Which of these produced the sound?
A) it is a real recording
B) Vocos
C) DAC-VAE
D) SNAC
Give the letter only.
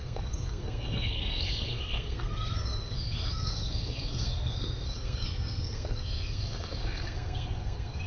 D